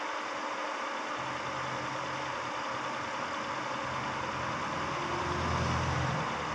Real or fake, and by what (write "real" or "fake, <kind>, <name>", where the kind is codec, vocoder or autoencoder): real